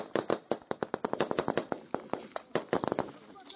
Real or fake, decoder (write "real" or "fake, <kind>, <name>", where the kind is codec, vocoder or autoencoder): real